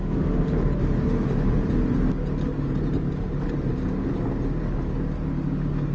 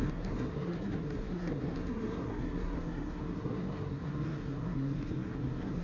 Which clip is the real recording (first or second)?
first